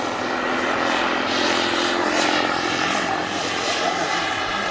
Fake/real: real